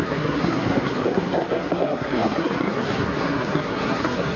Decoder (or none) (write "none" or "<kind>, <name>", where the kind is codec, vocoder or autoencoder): codec, SNAC